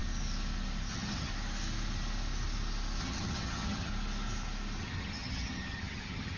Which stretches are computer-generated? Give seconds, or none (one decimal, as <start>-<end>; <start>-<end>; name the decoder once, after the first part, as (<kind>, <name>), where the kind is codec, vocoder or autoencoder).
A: 0.9-1.3 (vocoder, HiFi-GAN); 3.0-3.9; 4.8-6.4